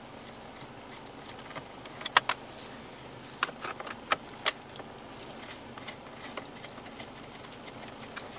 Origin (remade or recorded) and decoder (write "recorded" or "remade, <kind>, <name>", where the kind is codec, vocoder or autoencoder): recorded